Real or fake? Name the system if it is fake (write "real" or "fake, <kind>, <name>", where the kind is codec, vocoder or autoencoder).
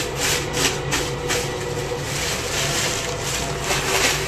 fake, vocoder, BigVGAN v2